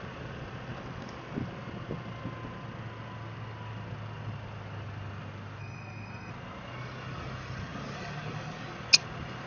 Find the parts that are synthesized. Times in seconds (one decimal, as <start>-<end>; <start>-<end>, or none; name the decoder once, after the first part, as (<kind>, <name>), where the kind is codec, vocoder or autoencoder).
5.6-6.3 (codec, SNAC)